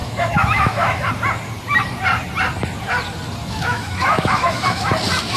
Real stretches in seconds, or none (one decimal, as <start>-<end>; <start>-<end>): 1.1-3.4; 4.9-5.4